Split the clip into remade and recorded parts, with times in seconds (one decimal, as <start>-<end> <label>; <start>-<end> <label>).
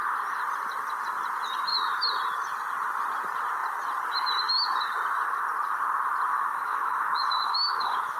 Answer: 0.0-6.3 recorded; 6.3-8.2 remade